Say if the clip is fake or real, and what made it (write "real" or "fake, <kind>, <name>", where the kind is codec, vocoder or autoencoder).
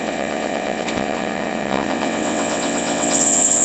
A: fake, vocoder, WaveNeXt